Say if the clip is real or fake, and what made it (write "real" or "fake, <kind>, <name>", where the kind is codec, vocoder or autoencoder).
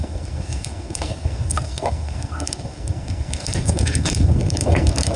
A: fake, codec, SNAC